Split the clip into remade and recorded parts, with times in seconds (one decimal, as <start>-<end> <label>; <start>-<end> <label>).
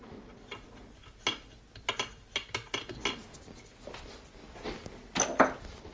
0.0-5.9 recorded